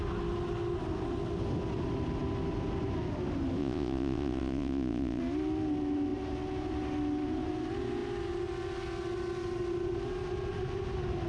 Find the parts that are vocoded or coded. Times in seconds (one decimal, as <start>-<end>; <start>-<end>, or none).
3.6-5.2